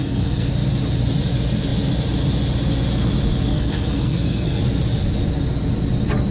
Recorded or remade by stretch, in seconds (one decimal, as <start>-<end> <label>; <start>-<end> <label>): 0.0-0.5 remade; 0.5-3.5 recorded; 3.5-4.6 remade; 4.6-6.3 recorded